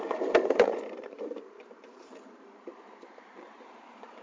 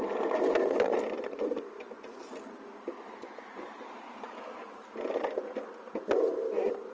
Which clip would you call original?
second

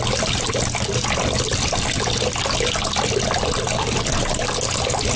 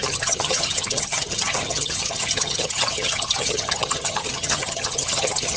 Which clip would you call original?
first